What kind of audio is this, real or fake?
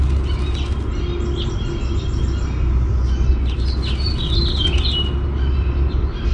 real